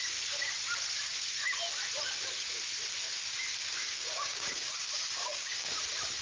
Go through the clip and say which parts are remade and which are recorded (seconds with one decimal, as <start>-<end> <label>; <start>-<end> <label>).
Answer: 0.0-3.8 recorded; 3.8-5.8 remade; 5.8-6.2 recorded